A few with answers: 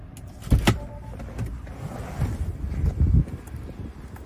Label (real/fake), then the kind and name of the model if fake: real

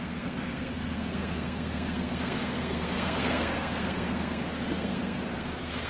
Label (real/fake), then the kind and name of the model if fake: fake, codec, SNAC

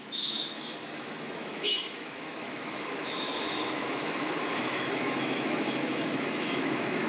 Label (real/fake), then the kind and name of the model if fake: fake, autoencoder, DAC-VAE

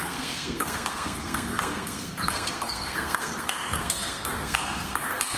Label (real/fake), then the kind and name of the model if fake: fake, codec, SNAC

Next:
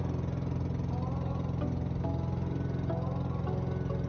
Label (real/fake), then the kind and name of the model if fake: real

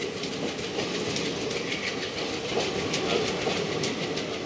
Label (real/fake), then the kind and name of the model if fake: real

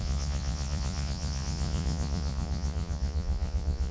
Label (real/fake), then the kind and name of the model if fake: fake, vocoder, Vocos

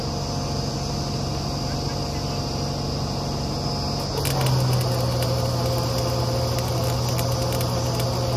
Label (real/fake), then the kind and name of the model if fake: real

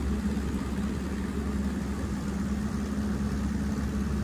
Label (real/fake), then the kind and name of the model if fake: real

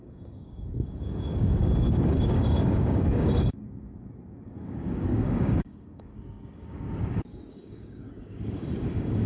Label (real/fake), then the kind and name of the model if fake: fake, codec, DAC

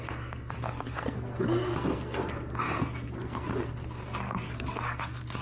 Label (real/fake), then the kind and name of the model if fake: fake, codec, SNAC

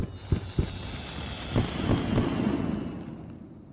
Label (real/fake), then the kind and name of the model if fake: real